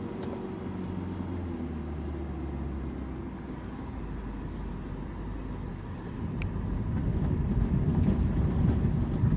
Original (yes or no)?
yes